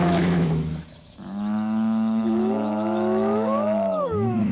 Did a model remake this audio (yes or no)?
yes